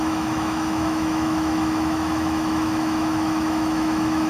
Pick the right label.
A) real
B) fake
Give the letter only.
B